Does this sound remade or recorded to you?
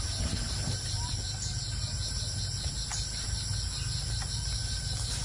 recorded